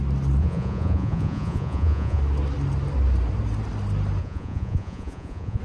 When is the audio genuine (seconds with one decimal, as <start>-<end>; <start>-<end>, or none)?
0.0-0.4; 2.2-4.2